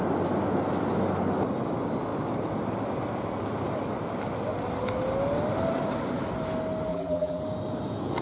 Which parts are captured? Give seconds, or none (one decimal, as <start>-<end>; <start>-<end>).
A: 0.0-6.9; 7.4-8.2